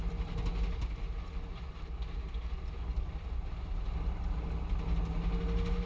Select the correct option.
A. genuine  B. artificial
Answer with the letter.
A